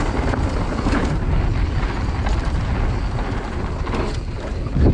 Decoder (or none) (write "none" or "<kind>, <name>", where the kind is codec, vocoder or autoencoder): none